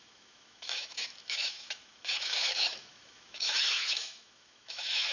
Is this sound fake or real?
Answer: fake